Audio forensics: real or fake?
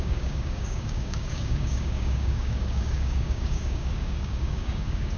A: fake